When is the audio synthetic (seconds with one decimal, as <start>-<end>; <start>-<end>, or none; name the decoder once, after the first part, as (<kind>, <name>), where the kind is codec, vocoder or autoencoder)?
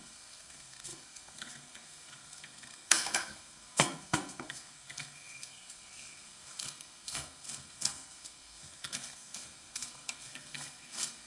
0.0-11.3 (codec, SNAC)